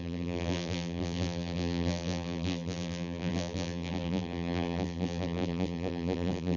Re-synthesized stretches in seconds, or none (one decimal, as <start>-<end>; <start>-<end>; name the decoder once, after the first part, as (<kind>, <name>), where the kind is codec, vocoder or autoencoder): 0.0-6.6 (vocoder, BigVGAN v2)